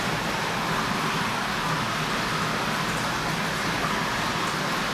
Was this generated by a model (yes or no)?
no